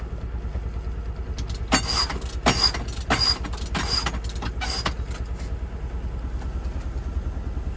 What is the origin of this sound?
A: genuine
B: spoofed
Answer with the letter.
A